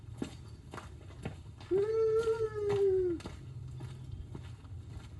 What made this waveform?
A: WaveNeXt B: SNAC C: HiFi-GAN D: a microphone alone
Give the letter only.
D